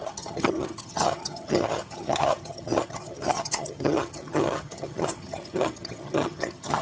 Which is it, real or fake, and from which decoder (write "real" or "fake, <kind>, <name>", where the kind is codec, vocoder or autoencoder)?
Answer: fake, vocoder, HiFi-GAN